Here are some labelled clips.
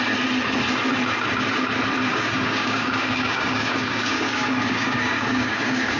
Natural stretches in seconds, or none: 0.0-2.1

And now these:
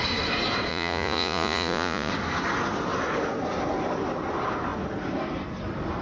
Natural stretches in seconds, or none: 0.0-0.7; 2.1-6.0

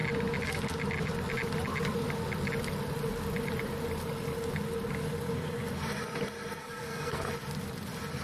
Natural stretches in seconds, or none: 0.0-6.6; 7.2-8.2

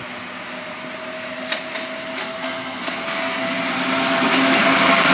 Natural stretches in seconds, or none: 0.0-2.2; 3.4-5.1

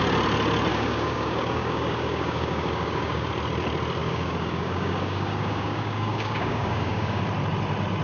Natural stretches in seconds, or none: 0.0-0.7; 3.3-4.0; 7.2-8.0

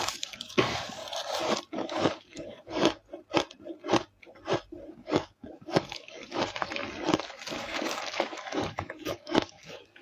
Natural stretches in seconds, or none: 1.0-1.7; 3.0-4.9; 6.8-7.6

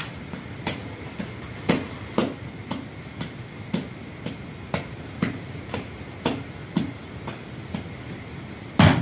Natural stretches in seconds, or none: 0.0-9.0